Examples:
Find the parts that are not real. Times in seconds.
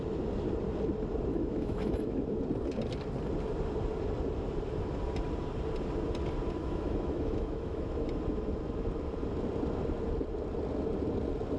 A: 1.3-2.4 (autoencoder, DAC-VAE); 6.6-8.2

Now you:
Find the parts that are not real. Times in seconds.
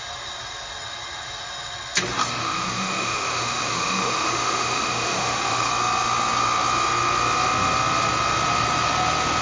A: 2.4-5.7 (autoencoder, DAC-VAE)